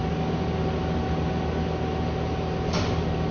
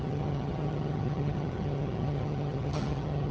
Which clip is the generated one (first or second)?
second